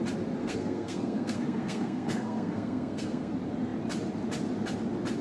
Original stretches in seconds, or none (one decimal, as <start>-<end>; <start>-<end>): 0.0-0.4; 3.3-5.2